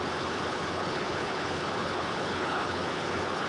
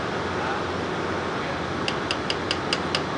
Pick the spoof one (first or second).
first